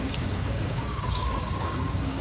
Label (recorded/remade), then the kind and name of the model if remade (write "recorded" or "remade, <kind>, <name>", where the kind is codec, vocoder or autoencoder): remade, codec, DAC